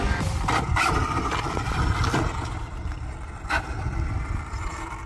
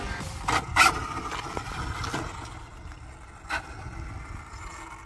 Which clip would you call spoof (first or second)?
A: first